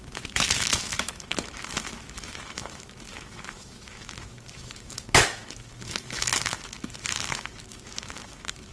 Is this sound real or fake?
fake